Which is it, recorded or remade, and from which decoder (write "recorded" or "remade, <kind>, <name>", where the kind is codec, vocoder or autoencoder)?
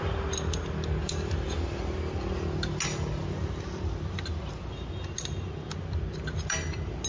recorded